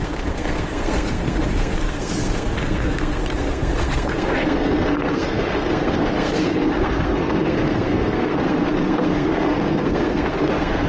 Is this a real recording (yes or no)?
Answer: no